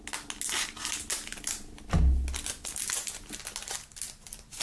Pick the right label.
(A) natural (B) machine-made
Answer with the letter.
A